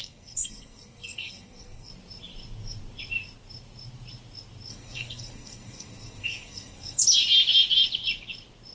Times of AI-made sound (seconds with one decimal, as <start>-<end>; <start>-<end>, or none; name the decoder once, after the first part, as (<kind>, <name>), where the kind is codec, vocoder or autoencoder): 0.0-1.9 (codec, SNAC); 4.7-7.0